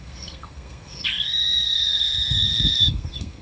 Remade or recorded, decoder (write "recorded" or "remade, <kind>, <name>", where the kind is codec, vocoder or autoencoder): remade, codec, SNAC